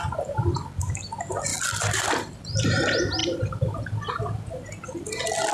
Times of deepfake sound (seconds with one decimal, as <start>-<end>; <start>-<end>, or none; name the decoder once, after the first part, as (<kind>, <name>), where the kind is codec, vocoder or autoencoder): 0.0-5.5 (vocoder, BigVGAN v2)